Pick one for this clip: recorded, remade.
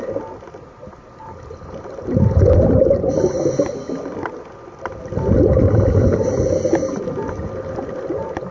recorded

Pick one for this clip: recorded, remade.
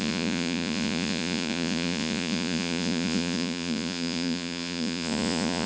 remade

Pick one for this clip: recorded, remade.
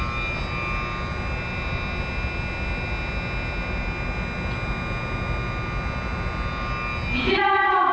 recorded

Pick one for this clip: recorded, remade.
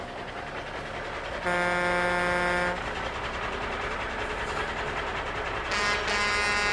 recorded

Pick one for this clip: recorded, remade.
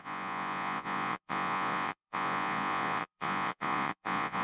remade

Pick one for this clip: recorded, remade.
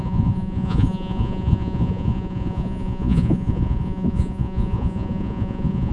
remade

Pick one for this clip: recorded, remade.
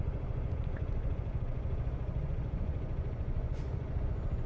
remade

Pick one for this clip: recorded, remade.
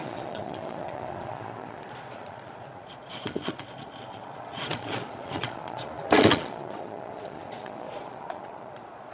remade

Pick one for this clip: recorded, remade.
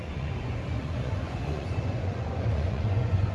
remade